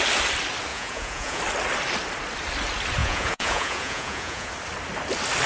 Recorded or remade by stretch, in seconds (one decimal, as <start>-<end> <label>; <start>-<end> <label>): 0.0-0.7 recorded; 0.7-1.4 remade; 1.4-3.0 recorded; 3.0-4.5 remade; 4.5-5.5 recorded